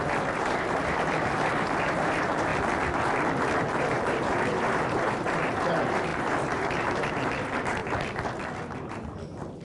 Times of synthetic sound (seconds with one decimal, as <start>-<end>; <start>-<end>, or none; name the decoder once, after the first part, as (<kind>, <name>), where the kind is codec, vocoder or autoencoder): 0.0-2.5 (vocoder, BigVGAN v2); 3.7-7.8